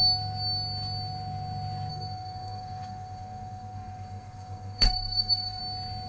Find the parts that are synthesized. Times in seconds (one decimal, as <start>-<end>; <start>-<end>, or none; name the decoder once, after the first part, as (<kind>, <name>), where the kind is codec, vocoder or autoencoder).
1.9-5.6 (codec, SNAC)